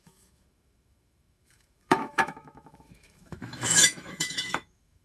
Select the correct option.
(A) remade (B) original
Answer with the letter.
A